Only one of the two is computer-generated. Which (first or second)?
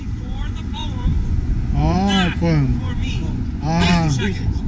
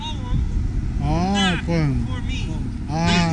first